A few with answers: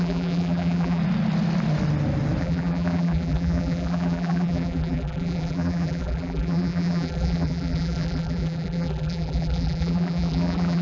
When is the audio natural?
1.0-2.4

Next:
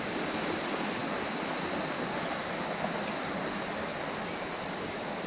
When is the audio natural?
0.0-5.3

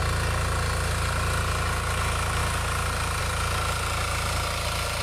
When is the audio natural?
0.0-5.0

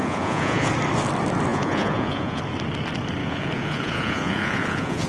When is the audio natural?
0.7-1.5; 2.4-3.2

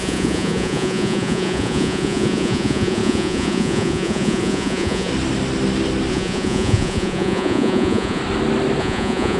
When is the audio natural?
5.1-6.1; 8.2-8.8

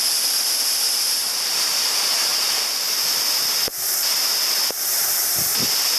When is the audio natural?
0.0-6.0